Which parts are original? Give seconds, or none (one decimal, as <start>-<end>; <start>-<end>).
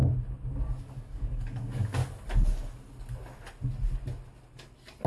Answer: 0.0-0.8; 2.0-5.1